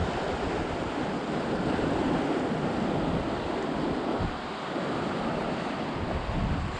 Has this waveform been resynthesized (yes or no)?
no